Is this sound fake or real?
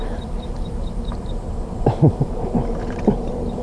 fake